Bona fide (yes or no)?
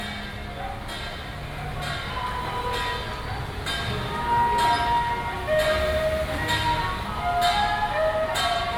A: yes